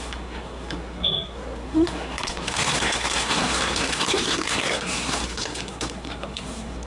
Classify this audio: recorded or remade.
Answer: remade